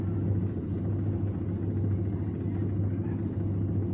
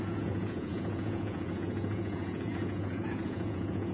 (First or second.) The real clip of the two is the first